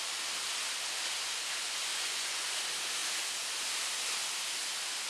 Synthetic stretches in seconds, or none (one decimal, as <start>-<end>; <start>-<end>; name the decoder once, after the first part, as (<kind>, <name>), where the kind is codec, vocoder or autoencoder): 1.9-2.5 (vocoder, Vocos)